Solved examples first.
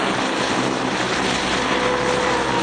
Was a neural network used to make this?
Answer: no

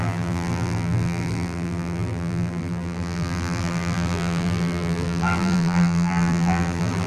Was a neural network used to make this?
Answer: yes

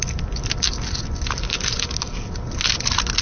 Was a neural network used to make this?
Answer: no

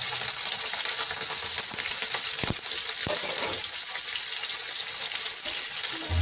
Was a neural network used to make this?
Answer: no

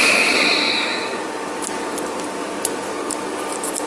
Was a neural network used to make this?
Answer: yes